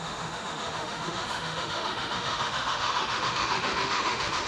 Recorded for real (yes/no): no